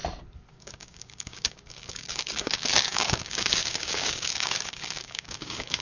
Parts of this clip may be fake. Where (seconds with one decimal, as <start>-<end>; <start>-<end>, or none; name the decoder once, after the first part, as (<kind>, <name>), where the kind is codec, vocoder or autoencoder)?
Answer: 0.5-5.8 (codec, DAC)